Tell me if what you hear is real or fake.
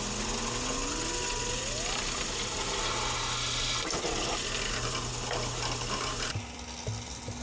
real